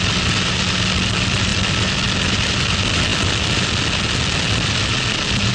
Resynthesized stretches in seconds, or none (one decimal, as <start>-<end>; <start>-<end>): none